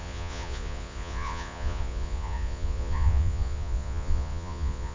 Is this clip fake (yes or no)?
yes